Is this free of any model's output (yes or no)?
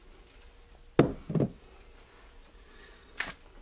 yes